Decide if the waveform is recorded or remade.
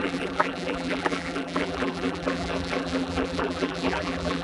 remade